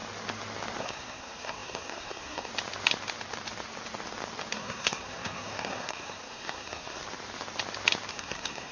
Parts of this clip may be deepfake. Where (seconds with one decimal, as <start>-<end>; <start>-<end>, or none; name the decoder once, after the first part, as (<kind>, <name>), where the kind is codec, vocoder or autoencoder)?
0.8-2.5 (codec, SNAC); 4.5-7.0; 8.1-8.7